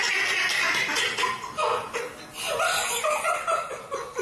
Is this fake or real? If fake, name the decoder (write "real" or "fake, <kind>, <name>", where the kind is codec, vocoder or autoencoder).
real